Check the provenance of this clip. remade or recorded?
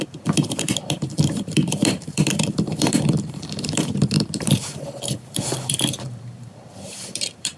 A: remade